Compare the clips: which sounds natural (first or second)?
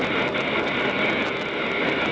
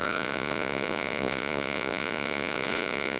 first